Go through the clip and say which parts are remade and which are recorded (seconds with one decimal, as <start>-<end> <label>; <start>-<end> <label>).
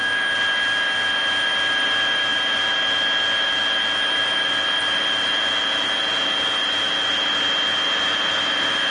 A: 0.0-8.9 recorded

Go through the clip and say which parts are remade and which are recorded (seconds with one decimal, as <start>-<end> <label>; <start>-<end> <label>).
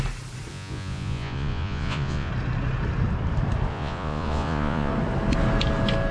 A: 0.0-0.5 recorded; 0.5-2.3 remade; 2.3-3.7 recorded; 3.7-4.9 remade; 4.9-6.1 recorded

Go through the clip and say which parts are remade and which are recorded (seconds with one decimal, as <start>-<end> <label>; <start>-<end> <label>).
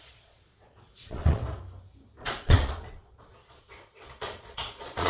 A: 0.0-1.4 remade; 1.4-2.2 recorded; 2.2-5.1 remade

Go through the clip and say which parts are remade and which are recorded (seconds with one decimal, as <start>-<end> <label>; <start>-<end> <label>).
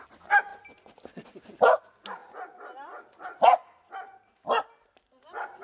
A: 0.0-5.6 recorded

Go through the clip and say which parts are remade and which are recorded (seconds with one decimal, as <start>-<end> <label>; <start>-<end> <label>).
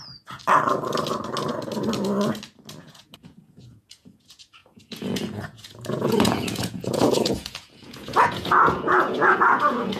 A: 0.0-0.4 remade; 0.4-2.8 recorded; 2.8-10.0 remade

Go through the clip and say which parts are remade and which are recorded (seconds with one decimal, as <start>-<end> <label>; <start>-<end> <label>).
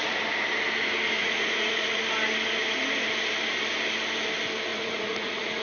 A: 0.0-1.2 recorded; 1.2-2.0 remade; 2.0-4.7 recorded; 4.7-5.6 remade